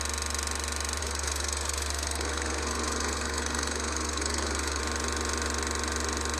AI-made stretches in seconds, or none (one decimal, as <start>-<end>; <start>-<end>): 1.0-4.8